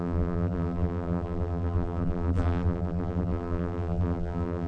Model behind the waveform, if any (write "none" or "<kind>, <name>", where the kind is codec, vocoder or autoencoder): vocoder, BigVGAN v2